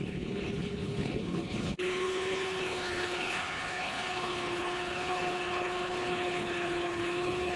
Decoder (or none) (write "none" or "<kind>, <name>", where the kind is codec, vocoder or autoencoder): codec, HILCodec